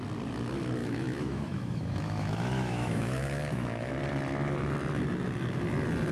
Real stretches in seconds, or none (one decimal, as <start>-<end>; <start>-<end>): 0.0-0.8; 3.9-6.1